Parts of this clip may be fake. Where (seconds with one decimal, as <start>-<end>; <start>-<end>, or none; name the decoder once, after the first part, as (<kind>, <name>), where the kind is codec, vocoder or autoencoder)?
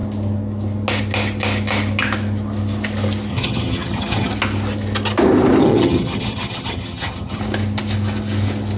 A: 3.3-4.3 (vocoder, HiFi-GAN); 5.6-7.4